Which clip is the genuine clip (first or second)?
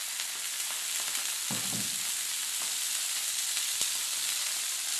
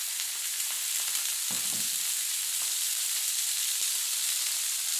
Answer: first